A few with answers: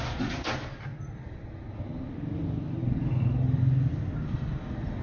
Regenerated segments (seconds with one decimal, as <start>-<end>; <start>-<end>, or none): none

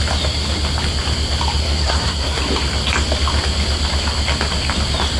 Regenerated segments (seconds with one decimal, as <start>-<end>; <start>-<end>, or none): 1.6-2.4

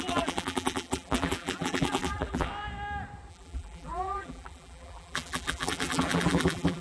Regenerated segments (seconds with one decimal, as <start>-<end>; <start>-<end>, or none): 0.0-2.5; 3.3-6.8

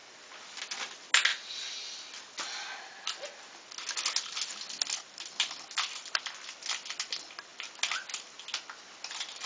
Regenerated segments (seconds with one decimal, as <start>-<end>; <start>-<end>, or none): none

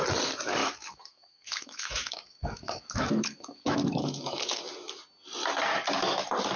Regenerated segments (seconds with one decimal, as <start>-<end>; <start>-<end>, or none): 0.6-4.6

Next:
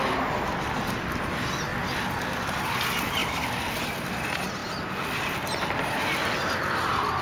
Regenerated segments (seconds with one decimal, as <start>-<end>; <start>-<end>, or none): 3.2-4.1

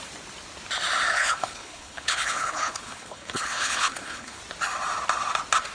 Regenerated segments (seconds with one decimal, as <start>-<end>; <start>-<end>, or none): 1.1-4.4